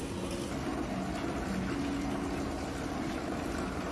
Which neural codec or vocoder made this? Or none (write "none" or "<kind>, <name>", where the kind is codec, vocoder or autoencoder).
none